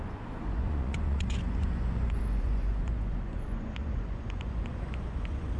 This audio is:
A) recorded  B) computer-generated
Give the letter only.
B